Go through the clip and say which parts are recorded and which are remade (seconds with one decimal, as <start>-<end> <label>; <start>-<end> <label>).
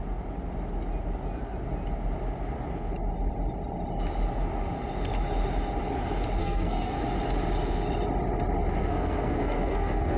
0.0-6.4 recorded; 6.4-7.0 remade; 7.0-8.8 recorded; 8.8-10.2 remade